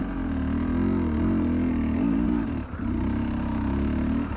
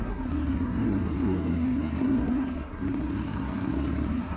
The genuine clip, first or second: first